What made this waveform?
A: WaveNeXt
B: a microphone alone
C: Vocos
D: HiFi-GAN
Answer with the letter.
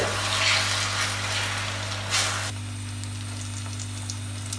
B